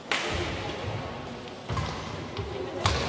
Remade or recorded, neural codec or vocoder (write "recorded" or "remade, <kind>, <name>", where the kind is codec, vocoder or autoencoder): recorded